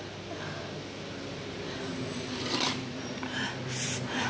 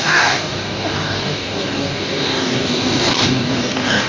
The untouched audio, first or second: first